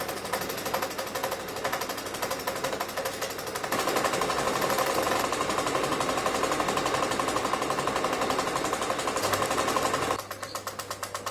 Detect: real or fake real